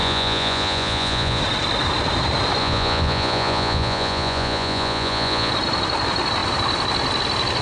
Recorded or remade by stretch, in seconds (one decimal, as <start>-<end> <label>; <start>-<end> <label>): 0.0-1.4 remade; 1.4-2.6 recorded; 2.6-5.5 remade; 5.5-7.6 recorded